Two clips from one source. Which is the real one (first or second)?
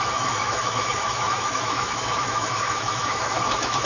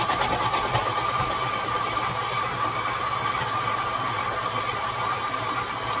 second